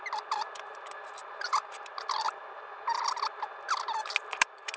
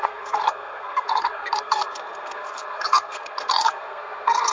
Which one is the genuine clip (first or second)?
first